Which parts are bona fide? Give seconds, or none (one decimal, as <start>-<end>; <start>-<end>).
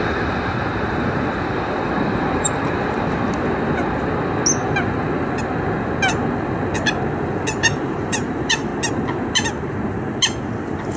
3.2-7.6; 8.7-10.4